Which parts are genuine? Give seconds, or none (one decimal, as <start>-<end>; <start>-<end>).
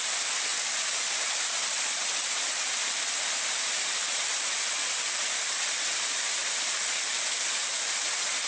0.0-8.5